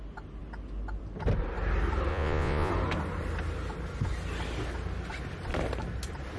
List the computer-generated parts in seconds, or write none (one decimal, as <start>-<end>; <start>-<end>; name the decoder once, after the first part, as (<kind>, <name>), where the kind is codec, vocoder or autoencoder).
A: 2.1-2.7 (vocoder, Vocos)